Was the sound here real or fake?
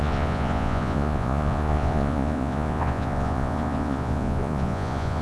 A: fake